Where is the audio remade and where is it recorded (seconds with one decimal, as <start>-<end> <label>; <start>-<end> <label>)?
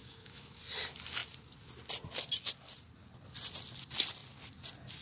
0.0-0.6 remade; 0.6-5.0 recorded